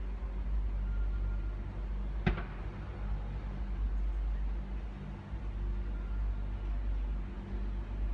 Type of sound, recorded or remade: recorded